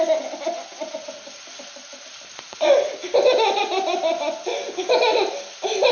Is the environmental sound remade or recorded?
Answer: recorded